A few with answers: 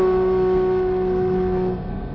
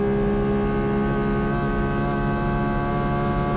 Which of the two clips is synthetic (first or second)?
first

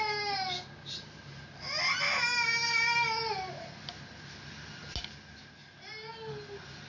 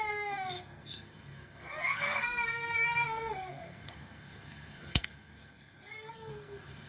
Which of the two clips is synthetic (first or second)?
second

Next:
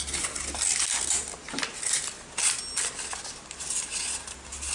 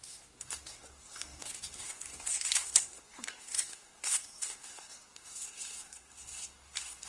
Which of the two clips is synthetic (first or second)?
second